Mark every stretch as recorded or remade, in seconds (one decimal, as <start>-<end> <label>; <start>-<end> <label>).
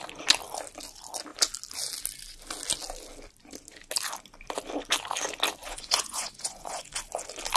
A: 0.0-5.6 recorded; 5.6-7.0 remade; 7.0-7.6 recorded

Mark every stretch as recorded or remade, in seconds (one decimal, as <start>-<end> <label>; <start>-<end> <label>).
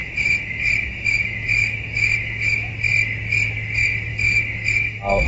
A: 0.0-2.7 remade; 2.7-4.1 recorded; 4.1-5.3 remade